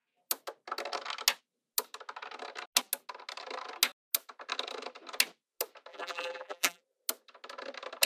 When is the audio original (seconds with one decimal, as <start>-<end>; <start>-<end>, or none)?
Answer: 0.0-5.9; 6.8-8.1

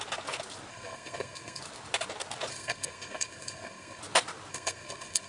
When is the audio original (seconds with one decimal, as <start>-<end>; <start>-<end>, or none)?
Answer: 0.0-0.7; 1.6-2.5; 4.0-4.5

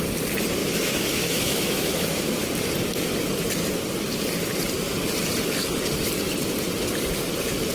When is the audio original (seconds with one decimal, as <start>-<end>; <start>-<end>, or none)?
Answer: 0.0-0.6; 2.5-7.7

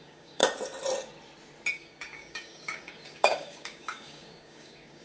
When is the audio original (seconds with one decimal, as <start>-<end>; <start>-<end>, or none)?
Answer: 0.4-1.7

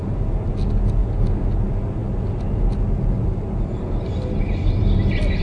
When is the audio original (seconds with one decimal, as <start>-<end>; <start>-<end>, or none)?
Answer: 0.0-5.4

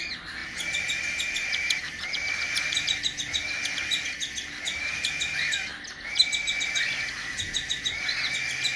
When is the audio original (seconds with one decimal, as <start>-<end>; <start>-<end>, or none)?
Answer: 0.0-8.8